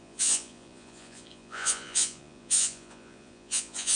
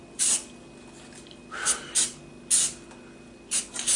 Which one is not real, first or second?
first